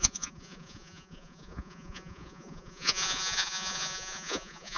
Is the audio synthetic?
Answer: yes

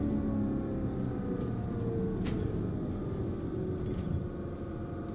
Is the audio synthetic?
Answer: no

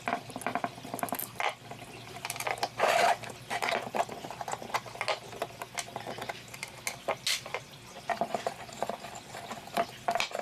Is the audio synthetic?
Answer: no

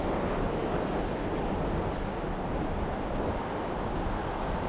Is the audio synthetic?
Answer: no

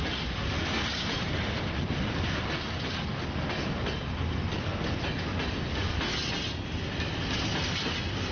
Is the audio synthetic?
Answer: no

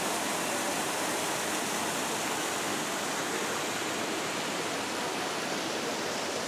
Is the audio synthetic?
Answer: no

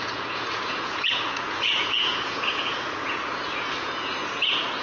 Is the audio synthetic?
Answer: yes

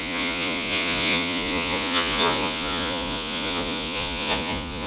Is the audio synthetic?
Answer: yes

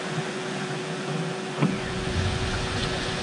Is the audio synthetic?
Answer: yes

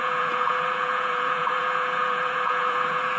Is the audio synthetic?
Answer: yes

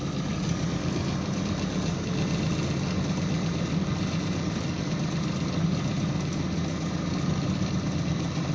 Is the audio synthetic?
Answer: no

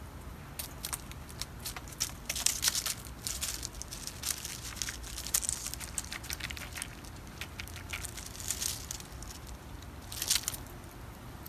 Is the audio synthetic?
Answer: no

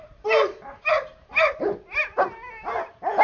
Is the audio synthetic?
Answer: no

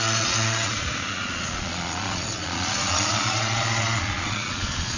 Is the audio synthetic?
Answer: yes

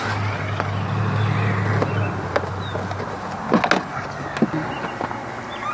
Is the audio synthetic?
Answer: no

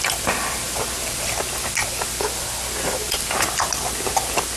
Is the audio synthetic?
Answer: no